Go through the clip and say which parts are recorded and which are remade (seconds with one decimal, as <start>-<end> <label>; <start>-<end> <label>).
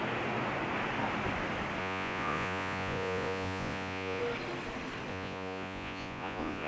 0.0-1.8 recorded; 1.8-4.2 remade; 4.2-5.1 recorded; 5.1-6.7 remade